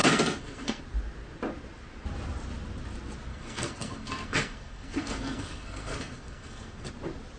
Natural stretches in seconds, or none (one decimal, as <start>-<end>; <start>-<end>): 0.8-3.3; 6.9-7.4